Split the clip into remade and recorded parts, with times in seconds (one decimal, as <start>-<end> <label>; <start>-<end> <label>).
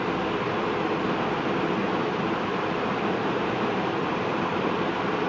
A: 0.0-1.8 recorded; 1.8-5.3 remade